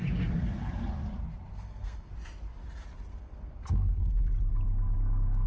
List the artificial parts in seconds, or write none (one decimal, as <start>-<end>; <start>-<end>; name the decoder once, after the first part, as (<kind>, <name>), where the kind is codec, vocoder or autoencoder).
1.5-2.1 (codec, SNAC); 3.1-4.2

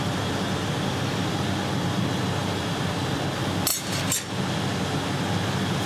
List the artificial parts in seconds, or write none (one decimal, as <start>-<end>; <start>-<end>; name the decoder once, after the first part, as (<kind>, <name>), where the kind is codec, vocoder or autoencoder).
none

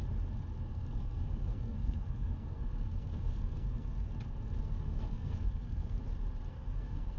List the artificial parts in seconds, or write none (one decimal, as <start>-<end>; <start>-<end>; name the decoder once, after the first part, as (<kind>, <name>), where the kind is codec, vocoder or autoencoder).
0.7-4.1 (codec, SNAC); 4.6-6.0; 6.5-7.2

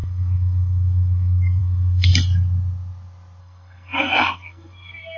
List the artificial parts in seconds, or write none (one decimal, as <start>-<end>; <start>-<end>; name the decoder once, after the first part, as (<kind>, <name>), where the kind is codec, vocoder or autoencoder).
0.0-2.1 (codec, SNAC); 3.4-5.2

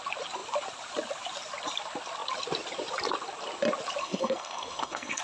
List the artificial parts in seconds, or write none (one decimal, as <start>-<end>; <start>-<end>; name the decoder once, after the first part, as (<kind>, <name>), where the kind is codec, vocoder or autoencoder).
4.0-5.2 (codec, SNAC)

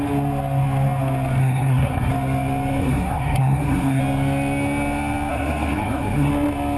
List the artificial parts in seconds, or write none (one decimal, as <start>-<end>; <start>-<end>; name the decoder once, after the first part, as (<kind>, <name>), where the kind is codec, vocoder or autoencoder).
1.4-2.1 (codec, SNAC); 2.8-4.0; 5.3-6.3